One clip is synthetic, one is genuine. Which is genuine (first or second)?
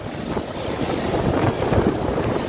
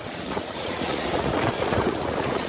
first